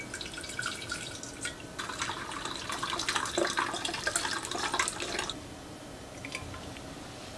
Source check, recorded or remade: recorded